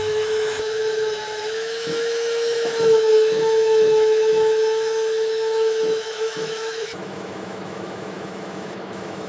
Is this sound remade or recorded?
remade